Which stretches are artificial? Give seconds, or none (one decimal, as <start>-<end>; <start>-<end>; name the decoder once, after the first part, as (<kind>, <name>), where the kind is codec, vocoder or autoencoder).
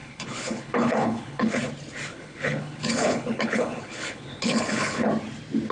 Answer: 0.0-1.7 (codec, HILCodec); 2.1-5.1